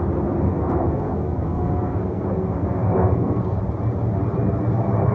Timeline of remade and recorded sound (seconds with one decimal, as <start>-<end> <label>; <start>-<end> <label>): 0.0-0.5 recorded; 0.5-3.6 remade; 3.6-5.1 recorded